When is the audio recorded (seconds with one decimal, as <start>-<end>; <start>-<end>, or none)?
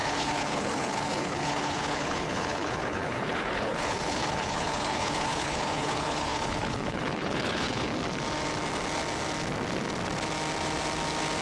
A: 7.9-11.4